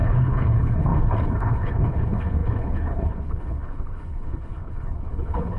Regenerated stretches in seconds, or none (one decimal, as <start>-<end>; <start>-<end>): 0.0-5.6